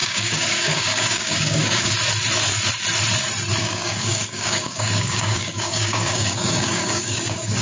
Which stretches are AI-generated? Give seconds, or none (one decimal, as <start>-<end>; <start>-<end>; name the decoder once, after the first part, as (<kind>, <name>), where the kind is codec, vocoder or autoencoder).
0.0-1.9 (codec, DAC); 3.6-7.6